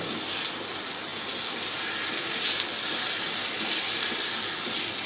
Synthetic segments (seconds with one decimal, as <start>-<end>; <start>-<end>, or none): 0.0-1.1; 3.8-5.1

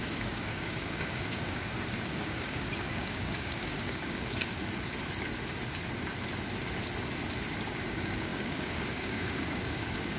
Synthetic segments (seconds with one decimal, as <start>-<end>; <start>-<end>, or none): 0.0-4.5; 7.9-10.2

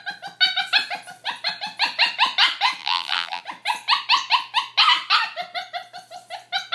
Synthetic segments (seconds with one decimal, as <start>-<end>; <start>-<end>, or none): 2.8-3.4

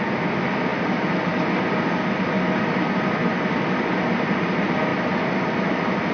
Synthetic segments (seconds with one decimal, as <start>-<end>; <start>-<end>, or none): none

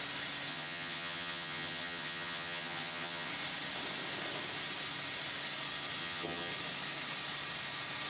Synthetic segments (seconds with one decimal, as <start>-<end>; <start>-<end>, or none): 0.5-3.3; 6.0-6.5